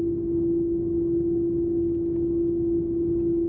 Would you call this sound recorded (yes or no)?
yes